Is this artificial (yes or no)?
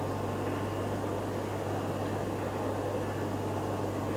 no